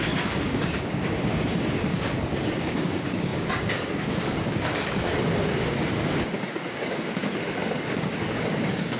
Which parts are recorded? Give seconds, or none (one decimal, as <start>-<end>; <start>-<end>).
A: none